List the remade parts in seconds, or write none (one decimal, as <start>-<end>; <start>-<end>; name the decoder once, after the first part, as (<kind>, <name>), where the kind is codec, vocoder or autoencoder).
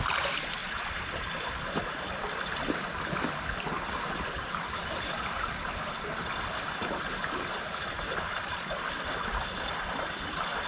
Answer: none